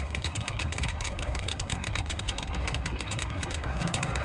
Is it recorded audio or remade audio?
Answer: remade